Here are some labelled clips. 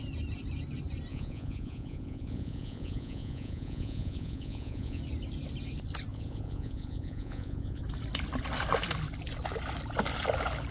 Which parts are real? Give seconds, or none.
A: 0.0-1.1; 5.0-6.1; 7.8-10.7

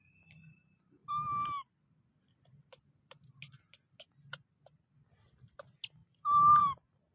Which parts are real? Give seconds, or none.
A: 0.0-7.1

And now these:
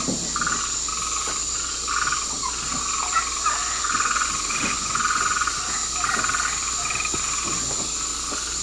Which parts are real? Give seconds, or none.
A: 0.0-3.6; 5.7-8.6

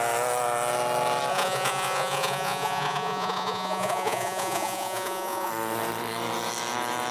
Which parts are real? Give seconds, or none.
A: 0.0-1.3; 5.5-7.1